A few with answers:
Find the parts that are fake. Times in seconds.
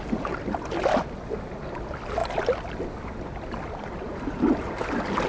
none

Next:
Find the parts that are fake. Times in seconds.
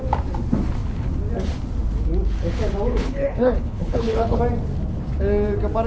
2.9-4.4 (codec, HILCodec)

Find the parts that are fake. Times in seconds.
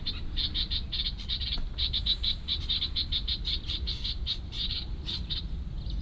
2.1-5.4 (vocoder, BigVGAN v2)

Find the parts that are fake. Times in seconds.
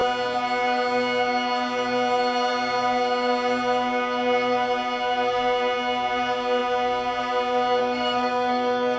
7.8-9.0 (codec, SNAC)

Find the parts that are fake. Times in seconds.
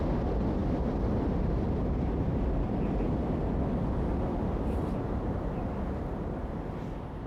none